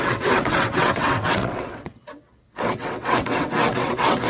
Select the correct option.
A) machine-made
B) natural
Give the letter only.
A